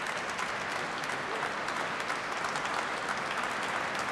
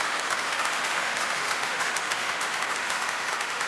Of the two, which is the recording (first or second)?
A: first